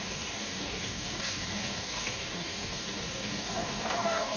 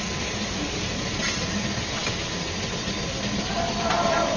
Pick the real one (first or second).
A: second